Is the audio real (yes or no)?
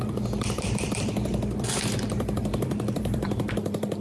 no